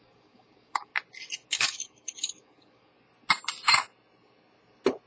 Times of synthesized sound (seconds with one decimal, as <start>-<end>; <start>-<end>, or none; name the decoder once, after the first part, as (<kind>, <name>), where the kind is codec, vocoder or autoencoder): 0.0-0.9 (codec, DAC); 1.5-2.9